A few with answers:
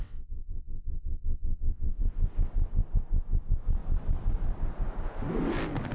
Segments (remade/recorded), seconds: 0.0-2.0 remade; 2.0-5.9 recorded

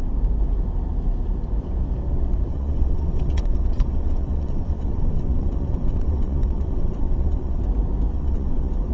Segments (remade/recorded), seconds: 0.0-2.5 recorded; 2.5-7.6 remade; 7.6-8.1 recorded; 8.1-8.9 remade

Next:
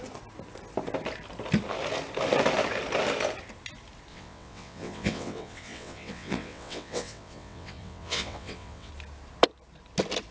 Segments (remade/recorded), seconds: 0.0-4.1 recorded; 4.1-8.9 remade; 8.9-10.3 recorded

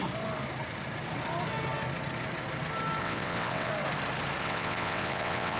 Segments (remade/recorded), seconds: 0.0-3.0 recorded; 3.0-3.7 remade; 3.7-4.4 recorded; 4.4-5.6 remade

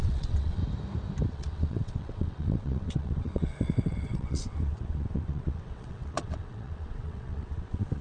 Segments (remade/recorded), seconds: 0.0-0.6 remade; 0.6-1.3 recorded; 1.3-8.0 remade

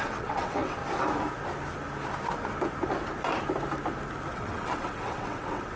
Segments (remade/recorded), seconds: 0.0-0.8 remade; 0.8-4.3 recorded; 4.3-5.8 remade

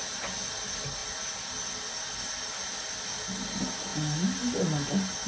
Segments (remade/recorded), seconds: 0.0-5.3 recorded